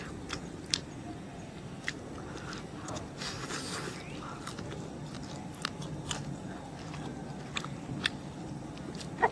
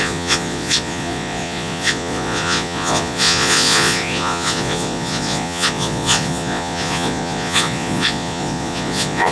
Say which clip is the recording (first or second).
first